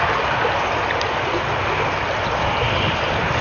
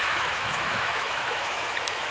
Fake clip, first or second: second